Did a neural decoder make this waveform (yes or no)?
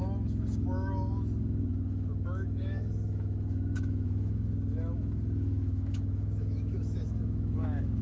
yes